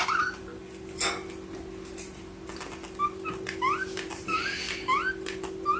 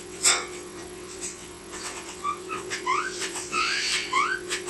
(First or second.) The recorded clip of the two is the first